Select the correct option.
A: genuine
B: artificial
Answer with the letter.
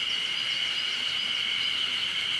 A